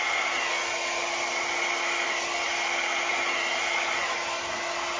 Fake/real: real